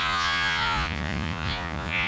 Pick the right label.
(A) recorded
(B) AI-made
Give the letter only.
B